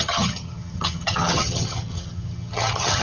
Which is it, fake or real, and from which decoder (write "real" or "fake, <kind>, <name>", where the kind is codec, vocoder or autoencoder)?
fake, vocoder, HiFi-GAN